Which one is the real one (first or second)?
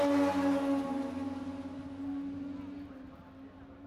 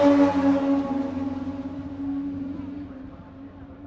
first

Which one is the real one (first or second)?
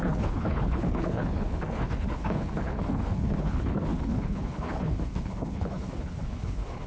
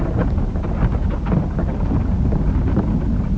second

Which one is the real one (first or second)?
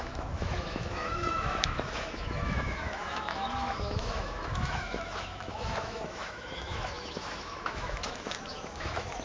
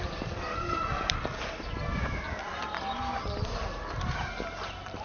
second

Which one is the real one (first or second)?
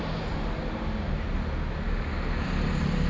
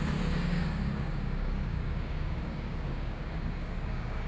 first